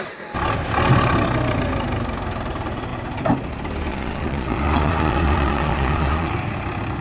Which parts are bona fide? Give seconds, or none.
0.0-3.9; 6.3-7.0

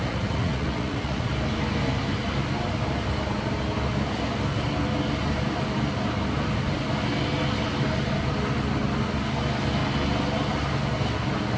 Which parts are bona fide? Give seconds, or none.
1.3-11.6